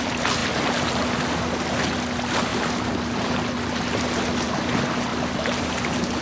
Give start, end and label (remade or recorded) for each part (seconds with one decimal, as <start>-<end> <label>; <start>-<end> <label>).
0.0-2.5 recorded; 2.5-3.3 remade; 3.3-5.1 recorded; 5.1-6.2 remade